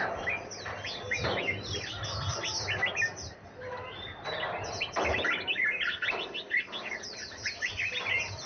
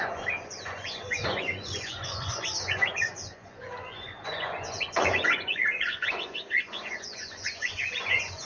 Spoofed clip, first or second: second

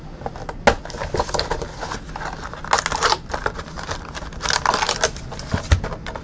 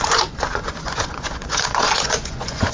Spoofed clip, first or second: second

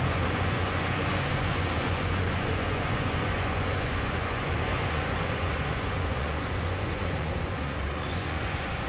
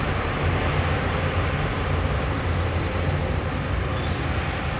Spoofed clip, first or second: first